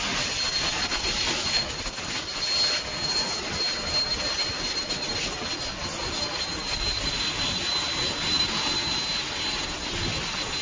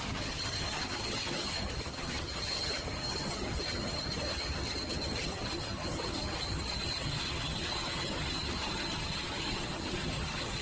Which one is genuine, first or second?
first